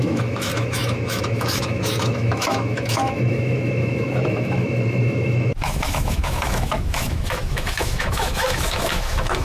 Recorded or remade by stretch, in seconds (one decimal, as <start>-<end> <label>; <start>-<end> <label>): 0.0-9.4 remade